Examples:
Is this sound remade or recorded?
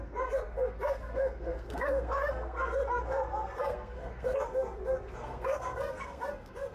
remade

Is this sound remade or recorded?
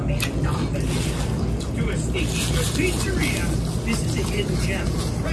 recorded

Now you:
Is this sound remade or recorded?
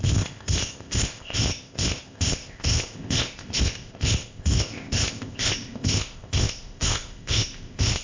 remade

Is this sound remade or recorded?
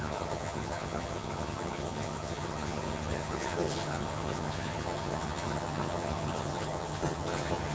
remade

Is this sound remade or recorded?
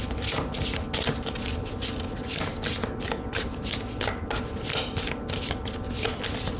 recorded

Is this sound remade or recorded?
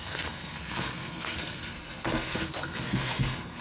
remade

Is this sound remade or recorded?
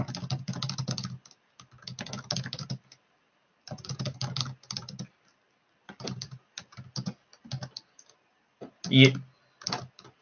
recorded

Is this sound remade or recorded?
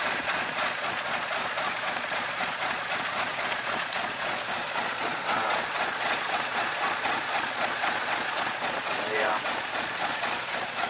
remade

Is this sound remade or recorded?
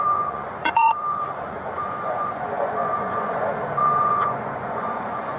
remade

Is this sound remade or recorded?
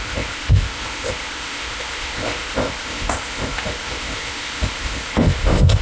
remade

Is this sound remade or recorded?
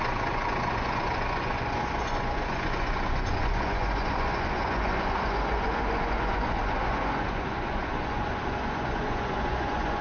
remade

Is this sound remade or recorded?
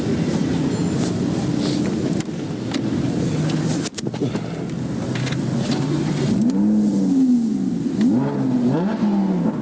recorded